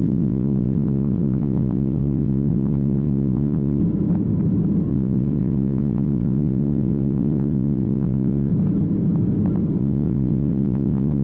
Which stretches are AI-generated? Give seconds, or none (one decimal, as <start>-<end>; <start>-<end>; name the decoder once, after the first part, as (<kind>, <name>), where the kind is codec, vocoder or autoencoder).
0.0-3.8 (vocoder, WaveNeXt); 4.9-8.5; 9.8-11.2